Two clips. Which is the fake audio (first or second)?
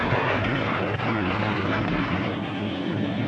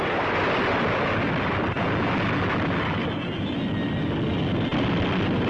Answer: first